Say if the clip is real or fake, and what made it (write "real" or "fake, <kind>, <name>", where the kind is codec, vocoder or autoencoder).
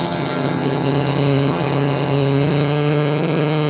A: fake, vocoder, HiFi-GAN